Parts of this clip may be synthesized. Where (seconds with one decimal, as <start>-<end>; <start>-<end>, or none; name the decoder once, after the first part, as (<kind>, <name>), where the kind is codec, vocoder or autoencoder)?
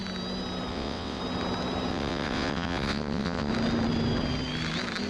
0.7-1.2 (vocoder, WaveNeXt); 1.9-3.5